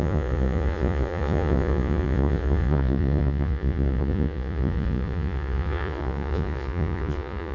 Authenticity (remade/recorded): remade